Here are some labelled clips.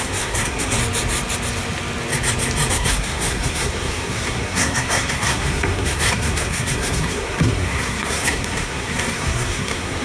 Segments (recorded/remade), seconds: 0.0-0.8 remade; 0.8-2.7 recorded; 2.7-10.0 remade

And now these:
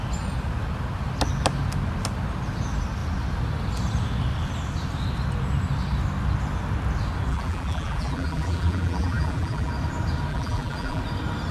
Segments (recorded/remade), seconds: 0.0-7.3 recorded; 7.3-9.7 remade; 9.7-10.3 recorded; 10.3-11.0 remade; 11.0-11.5 recorded

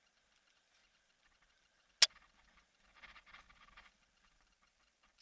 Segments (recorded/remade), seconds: 0.0-5.2 recorded

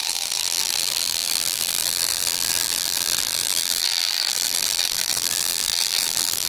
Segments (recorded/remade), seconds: 0.0-6.5 remade

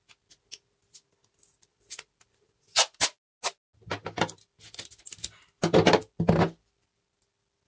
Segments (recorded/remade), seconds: 0.0-7.7 recorded

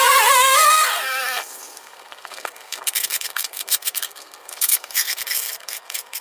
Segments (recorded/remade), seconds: 0.0-6.2 remade